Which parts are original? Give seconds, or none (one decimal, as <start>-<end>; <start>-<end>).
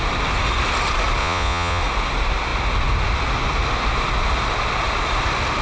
0.0-1.2; 1.8-5.6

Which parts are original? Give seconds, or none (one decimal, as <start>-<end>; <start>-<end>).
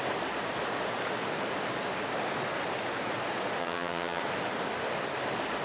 0.0-3.6; 4.2-5.6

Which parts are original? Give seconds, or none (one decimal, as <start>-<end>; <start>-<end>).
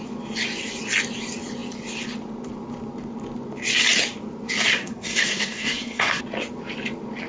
0.0-4.7; 6.2-7.3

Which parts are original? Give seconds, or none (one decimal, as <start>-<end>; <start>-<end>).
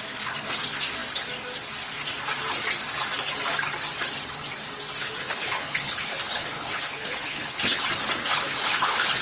0.0-5.2; 7.8-8.2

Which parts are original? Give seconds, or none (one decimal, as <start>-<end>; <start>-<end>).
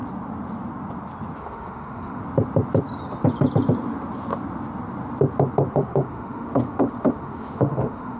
0.0-1.4; 2.2-5.7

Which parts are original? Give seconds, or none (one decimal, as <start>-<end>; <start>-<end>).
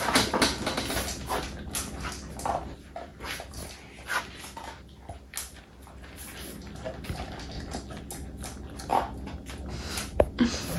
0.0-10.8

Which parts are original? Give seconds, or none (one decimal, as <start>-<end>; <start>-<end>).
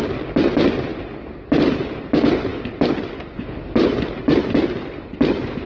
0.0-5.7